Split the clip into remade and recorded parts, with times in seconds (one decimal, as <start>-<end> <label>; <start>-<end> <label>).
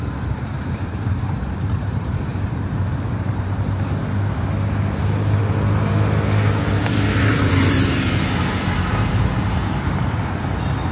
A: 0.0-4.0 remade; 4.0-6.8 recorded; 6.8-10.9 remade